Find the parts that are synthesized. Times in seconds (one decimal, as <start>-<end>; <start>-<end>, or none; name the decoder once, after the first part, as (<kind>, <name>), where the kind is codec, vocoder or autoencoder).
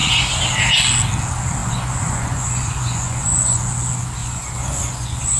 1.6-3.6 (vocoder, Vocos); 4.2-5.4